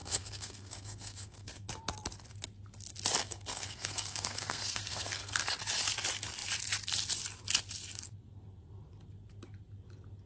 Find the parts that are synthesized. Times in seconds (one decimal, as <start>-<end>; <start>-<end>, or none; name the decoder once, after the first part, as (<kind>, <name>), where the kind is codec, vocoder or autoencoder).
0.0-1.7 (codec, SNAC); 3.2-5.5